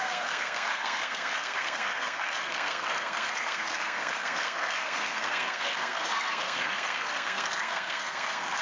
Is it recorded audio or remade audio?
remade